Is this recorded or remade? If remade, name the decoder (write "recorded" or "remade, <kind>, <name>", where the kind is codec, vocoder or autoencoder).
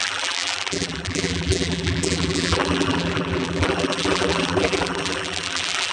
remade, vocoder, BigVGAN v2